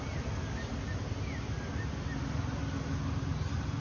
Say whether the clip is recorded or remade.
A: recorded